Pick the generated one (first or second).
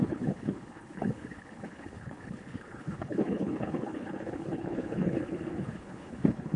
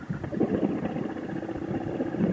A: first